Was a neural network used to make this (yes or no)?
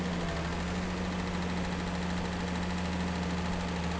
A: no